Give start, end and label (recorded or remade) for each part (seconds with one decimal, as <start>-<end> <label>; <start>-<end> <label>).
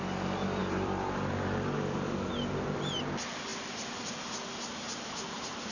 0.0-0.6 recorded; 0.6-2.3 remade; 2.3-3.5 recorded; 3.5-4.1 remade; 4.1-5.7 recorded